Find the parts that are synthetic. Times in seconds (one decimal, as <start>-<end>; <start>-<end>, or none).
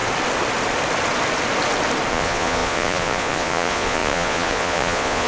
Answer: 2.1-5.3